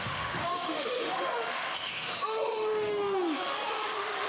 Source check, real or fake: fake